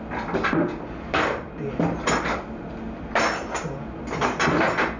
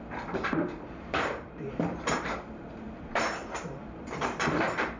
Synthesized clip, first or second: second